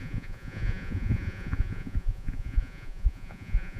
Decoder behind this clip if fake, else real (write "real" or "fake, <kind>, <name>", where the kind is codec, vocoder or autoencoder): fake, vocoder, Vocos